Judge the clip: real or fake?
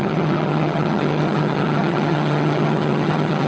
fake